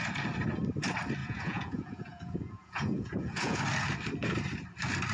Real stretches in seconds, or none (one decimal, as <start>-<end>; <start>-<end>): 0.0-1.2; 3.6-5.1